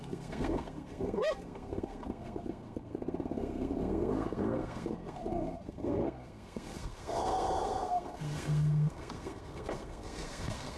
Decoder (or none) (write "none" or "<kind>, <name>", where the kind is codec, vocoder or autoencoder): codec, SNAC